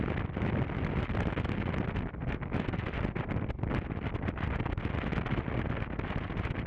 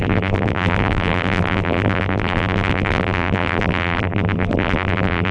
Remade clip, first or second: second